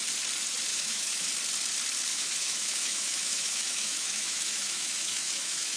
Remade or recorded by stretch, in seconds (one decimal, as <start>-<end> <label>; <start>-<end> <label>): 0.0-0.7 recorded; 0.7-1.3 remade; 1.3-2.1 recorded; 2.1-5.8 remade